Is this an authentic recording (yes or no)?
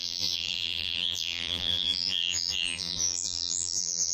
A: no